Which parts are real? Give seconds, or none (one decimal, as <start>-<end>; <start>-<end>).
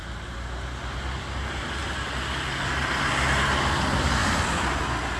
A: 0.0-5.2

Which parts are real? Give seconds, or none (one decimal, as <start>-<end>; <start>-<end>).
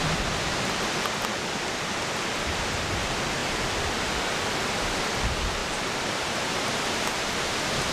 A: 0.0-3.4; 4.4-5.6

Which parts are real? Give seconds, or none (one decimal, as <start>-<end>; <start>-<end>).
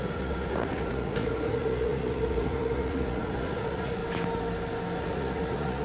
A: 4.0-5.0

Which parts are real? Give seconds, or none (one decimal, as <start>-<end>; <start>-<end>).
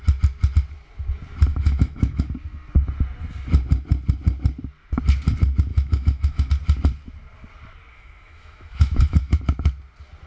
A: 0.0-1.5; 2.2-5.7; 6.5-7.9; 9.4-10.3